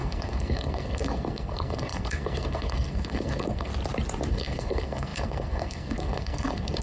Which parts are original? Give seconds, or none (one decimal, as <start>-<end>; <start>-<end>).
3.7-4.3